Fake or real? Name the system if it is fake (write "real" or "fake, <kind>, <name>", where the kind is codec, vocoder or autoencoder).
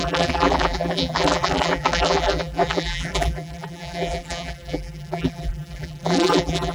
fake, vocoder, BigVGAN v2